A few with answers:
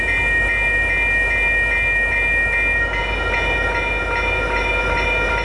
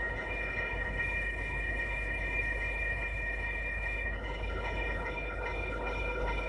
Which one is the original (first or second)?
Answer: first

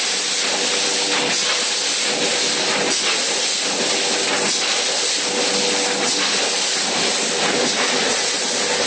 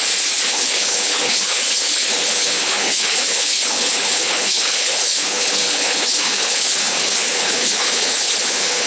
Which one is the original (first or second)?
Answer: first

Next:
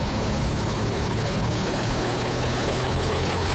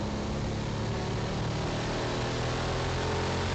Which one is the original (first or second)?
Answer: second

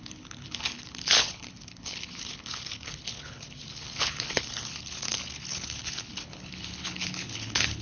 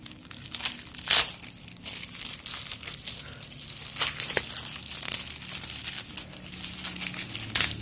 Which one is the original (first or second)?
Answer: second